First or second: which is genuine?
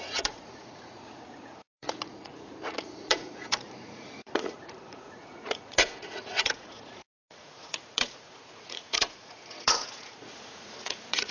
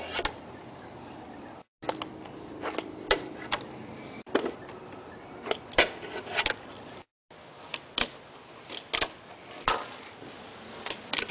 second